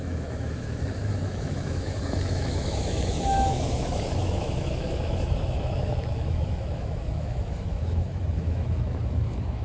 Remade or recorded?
remade